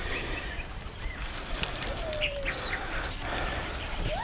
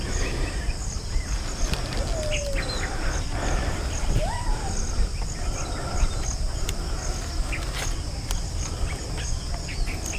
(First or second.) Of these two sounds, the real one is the second